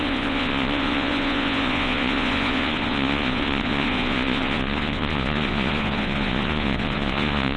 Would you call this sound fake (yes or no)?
yes